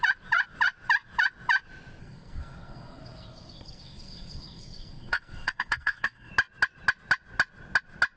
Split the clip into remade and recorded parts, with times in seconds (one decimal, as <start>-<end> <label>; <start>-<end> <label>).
0.0-2.0 recorded; 2.0-6.3 remade; 6.3-8.2 recorded